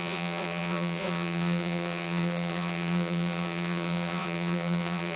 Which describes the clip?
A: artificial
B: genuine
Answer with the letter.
A